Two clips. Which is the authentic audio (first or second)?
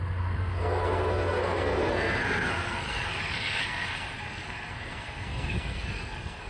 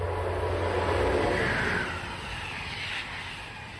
second